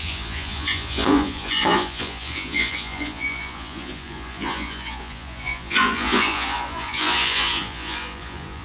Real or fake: fake